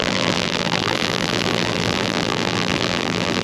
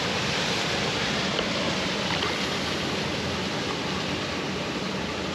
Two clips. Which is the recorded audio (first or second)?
second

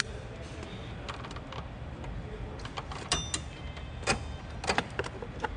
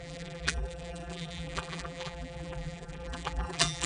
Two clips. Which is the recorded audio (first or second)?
first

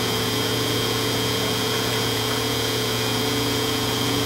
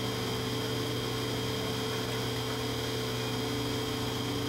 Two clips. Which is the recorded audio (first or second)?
second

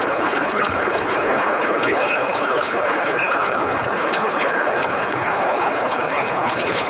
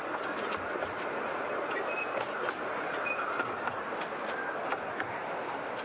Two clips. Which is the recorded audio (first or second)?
second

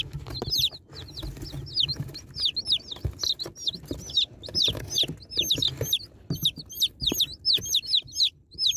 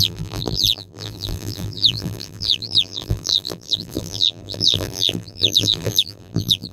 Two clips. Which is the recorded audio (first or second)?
first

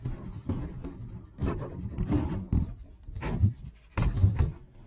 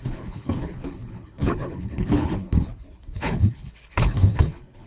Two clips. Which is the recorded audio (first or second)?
first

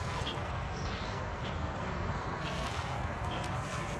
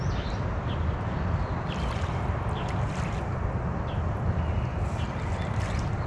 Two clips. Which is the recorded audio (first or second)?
second